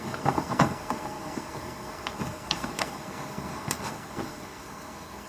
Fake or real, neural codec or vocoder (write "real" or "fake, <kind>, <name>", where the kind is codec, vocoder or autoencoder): fake, codec, SNAC